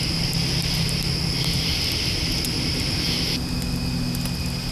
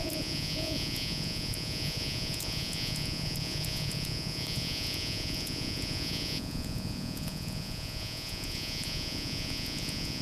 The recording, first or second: first